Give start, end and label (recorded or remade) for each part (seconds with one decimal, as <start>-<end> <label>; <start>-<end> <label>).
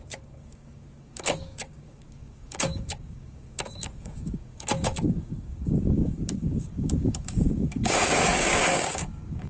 0.0-9.5 remade